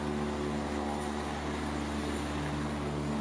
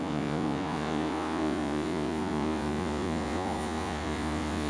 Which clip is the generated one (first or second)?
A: second